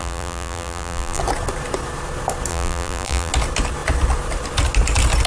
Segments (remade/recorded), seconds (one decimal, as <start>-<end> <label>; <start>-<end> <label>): 0.0-1.2 remade; 1.2-2.5 recorded; 2.5-3.3 remade; 3.3-5.3 recorded